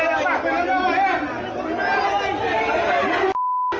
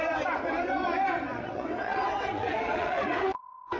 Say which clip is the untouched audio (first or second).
first